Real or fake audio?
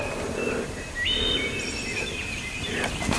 real